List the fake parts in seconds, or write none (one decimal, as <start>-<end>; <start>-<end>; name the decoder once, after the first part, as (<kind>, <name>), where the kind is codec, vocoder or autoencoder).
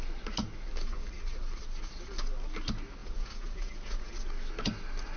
3.0-4.1 (vocoder, Vocos)